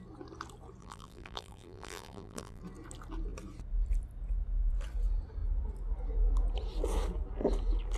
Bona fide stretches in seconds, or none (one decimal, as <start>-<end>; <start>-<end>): 0.0-0.8; 2.6-8.0